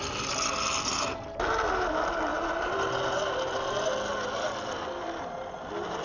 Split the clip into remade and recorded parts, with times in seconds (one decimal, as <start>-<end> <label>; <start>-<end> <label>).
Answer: 0.0-6.0 recorded